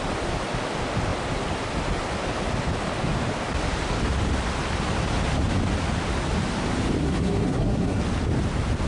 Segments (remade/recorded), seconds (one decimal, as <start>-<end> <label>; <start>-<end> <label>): 0.0-7.0 recorded; 7.0-8.0 remade; 8.0-8.9 recorded